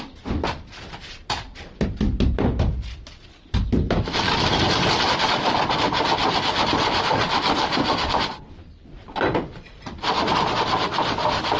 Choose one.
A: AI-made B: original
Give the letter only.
B